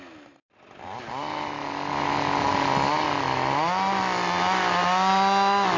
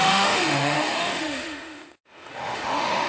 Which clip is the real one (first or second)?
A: first